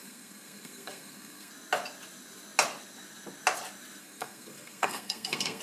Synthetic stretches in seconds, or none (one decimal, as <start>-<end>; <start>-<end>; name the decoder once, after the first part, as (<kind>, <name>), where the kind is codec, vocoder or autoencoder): 0.0-1.5 (codec, SNAC); 4.0-5.6